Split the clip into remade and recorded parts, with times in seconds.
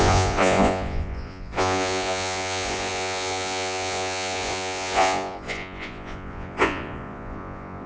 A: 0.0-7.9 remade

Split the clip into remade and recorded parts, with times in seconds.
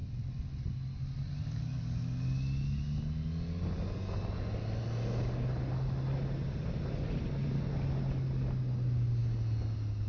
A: 0.0-10.1 recorded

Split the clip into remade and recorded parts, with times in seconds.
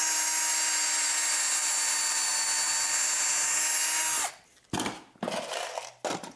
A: 0.0-6.4 recorded